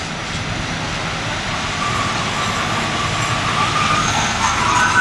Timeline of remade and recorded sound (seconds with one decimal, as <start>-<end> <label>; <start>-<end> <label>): 0.0-4.0 recorded; 4.0-4.6 remade; 4.6-5.0 recorded